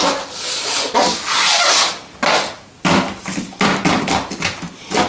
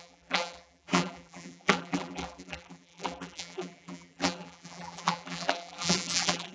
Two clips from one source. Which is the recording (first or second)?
first